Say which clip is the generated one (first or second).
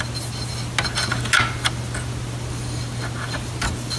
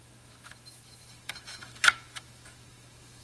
second